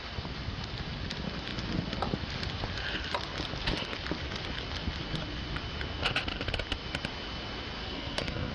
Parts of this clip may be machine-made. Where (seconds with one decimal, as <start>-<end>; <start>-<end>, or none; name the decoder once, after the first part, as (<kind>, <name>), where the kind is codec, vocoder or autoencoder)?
7.8-8.5 (codec, SNAC)